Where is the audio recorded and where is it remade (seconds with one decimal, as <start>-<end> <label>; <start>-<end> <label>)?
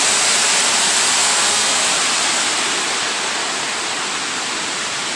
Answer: 0.0-1.2 recorded; 1.2-1.8 remade; 1.8-5.2 recorded